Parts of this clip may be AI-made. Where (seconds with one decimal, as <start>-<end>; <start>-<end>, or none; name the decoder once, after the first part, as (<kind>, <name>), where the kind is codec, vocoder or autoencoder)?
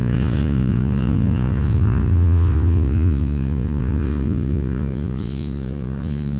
0.0-6.4 (vocoder, Vocos)